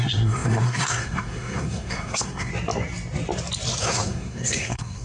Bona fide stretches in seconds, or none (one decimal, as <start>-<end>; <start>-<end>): 2.5-3.8